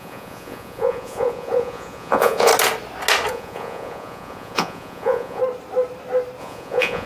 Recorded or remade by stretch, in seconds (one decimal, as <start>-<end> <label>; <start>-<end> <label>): 0.0-2.5 remade; 2.5-3.3 recorded; 3.3-5.4 remade; 5.4-6.4 recorded; 6.4-7.1 remade